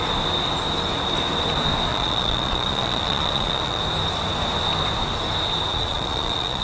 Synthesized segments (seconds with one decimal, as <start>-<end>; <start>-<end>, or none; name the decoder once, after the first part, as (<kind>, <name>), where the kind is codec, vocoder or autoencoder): 1.9-3.8 (vocoder, Vocos); 5.7-6.6

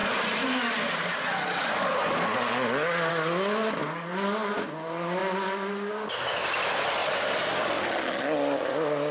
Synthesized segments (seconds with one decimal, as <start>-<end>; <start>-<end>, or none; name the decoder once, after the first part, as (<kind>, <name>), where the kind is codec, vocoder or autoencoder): none